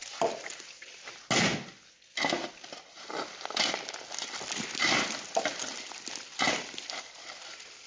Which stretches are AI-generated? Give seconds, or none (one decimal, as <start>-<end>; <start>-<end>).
none

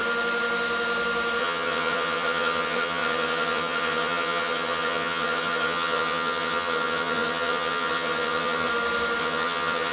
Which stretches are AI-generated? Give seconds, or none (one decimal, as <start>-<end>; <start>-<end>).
1.4-8.7; 9.2-9.9

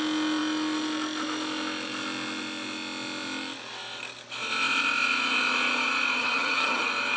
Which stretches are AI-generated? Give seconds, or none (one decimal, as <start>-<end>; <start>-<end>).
6.2-6.8

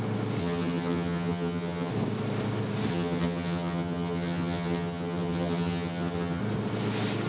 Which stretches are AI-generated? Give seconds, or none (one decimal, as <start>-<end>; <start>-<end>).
0.4-1.9; 2.9-6.4

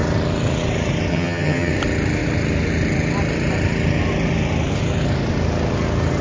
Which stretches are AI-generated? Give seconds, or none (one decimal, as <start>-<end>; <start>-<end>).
1.1-1.7

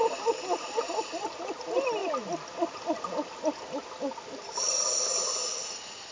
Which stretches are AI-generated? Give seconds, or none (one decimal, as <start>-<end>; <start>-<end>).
none